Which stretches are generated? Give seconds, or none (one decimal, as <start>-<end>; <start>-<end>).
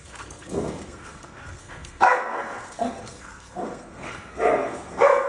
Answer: 0.0-5.3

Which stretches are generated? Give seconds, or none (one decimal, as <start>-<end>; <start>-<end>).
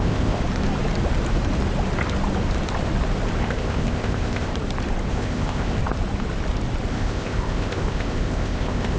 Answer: 0.0-0.4; 3.4-4.5; 5.1-5.8; 6.9-9.0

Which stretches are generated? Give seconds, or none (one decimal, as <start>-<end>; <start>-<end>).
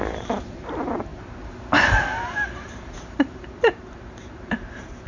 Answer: 0.0-1.1; 1.8-5.1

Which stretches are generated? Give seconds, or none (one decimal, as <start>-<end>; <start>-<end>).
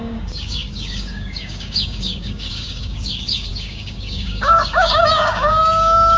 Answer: 0.0-6.2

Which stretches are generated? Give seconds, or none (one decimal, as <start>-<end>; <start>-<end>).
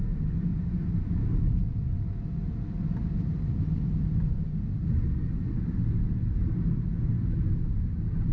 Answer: 0.5-3.6